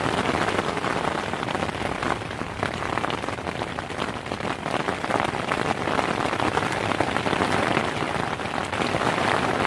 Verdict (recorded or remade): remade